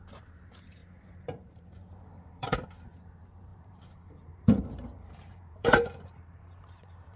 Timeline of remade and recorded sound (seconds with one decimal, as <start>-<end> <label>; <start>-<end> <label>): 0.0-7.2 remade